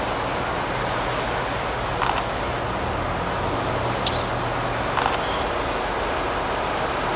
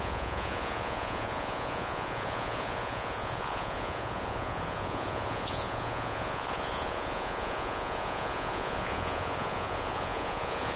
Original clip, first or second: first